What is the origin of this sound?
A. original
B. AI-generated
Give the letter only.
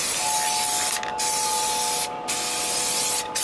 A